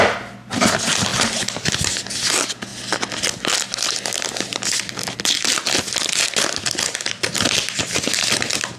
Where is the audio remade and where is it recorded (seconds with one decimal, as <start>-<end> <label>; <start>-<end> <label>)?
0.0-8.8 recorded